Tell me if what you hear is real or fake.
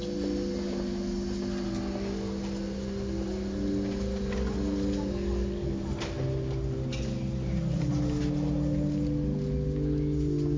real